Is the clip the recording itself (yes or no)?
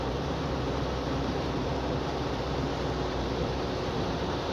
no